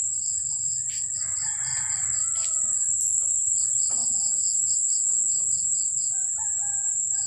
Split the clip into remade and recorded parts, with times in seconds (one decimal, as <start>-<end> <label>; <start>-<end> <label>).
0.0-4.0 recorded; 4.0-7.3 remade